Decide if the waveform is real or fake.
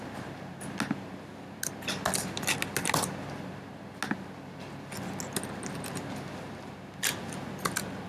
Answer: real